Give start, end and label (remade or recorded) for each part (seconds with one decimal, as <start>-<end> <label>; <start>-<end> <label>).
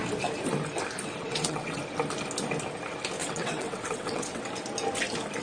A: 0.0-1.2 recorded; 1.2-1.8 remade; 1.8-3.2 recorded; 3.2-4.4 remade; 4.4-5.4 recorded